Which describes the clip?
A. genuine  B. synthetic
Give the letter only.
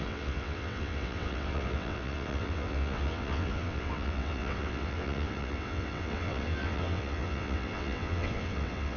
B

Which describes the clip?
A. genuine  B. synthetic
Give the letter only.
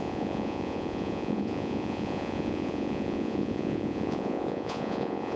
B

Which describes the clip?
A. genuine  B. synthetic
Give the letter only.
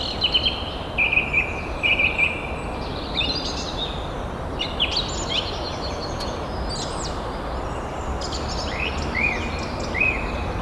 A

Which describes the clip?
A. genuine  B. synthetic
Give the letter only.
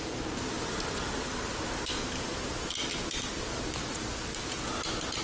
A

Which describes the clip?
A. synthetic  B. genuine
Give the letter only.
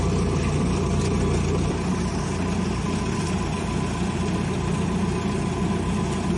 B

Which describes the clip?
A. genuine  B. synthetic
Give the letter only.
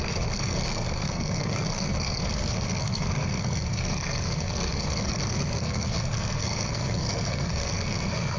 B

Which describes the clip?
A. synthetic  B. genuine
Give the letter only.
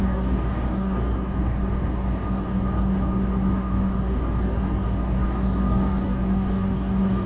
A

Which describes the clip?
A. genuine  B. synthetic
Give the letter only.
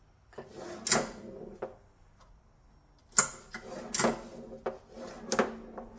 A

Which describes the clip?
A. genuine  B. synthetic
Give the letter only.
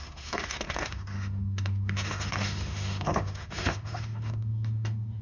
B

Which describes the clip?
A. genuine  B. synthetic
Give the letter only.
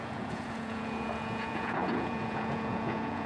B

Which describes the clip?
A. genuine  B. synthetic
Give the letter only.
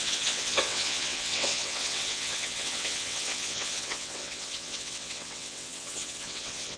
B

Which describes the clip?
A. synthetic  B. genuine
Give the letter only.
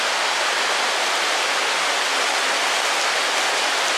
B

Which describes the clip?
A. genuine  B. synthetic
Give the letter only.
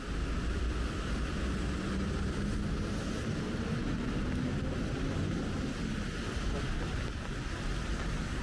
A